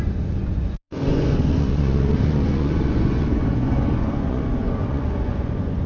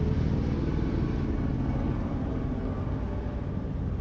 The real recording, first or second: second